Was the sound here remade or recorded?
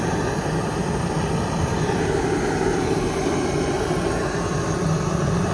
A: recorded